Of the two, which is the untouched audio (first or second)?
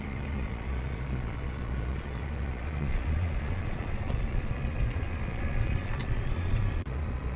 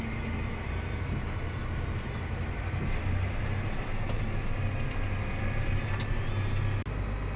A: second